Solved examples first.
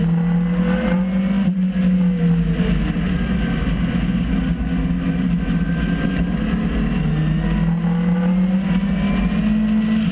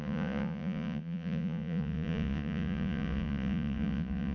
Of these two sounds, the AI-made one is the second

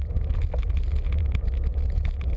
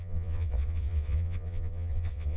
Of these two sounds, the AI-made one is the second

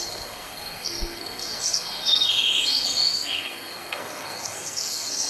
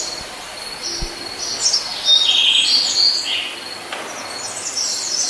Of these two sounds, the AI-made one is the first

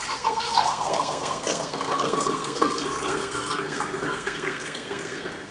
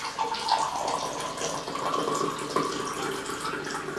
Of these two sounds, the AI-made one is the first